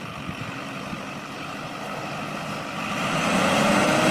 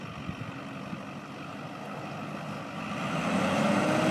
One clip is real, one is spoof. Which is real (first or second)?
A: second